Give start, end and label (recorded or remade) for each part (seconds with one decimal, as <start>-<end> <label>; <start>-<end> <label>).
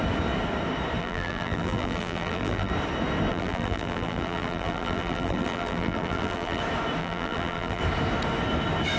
0.0-1.0 recorded; 1.0-2.7 remade; 2.7-3.3 recorded; 3.3-6.6 remade; 6.6-7.0 recorded; 7.0-7.8 remade; 7.8-9.0 recorded